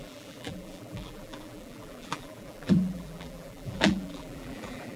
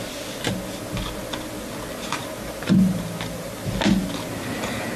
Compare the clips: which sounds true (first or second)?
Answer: second